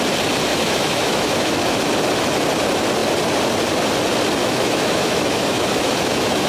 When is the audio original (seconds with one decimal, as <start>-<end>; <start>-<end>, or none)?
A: 0.0-0.5; 1.9-4.4